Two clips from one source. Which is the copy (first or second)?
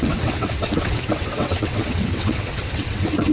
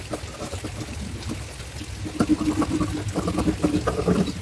first